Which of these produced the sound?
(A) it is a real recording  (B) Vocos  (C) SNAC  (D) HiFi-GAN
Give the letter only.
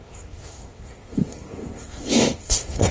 C